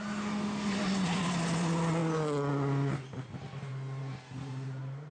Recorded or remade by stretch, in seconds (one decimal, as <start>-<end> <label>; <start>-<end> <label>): 0.0-5.1 recorded